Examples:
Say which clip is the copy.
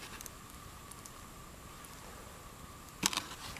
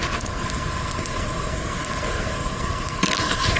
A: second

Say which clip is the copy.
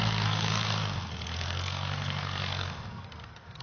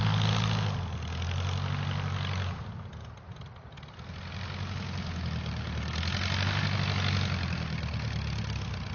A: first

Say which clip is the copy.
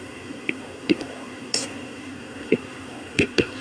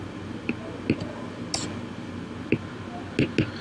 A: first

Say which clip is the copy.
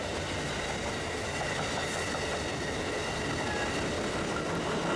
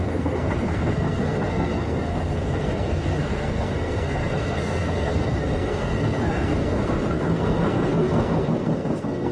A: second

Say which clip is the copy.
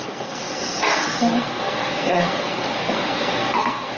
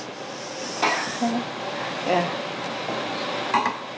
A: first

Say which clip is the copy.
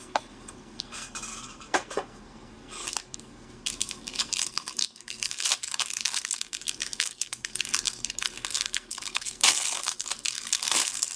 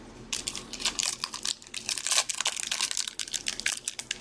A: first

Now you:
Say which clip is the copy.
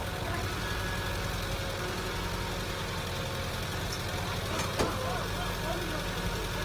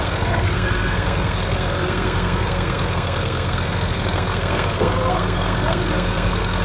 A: second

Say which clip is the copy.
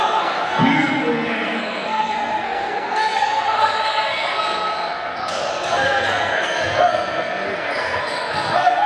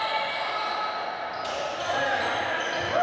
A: first